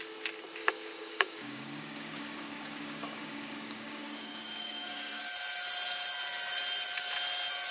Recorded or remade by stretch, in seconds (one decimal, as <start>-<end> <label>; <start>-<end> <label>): 0.0-0.6 recorded; 0.6-5.2 remade; 5.2-7.7 recorded